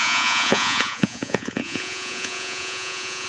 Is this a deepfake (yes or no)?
yes